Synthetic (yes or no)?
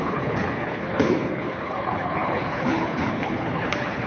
yes